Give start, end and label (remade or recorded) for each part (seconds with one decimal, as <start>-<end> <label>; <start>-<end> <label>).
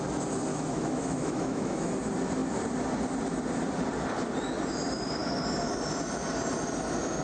0.0-0.5 recorded; 0.5-1.9 remade; 1.9-7.2 recorded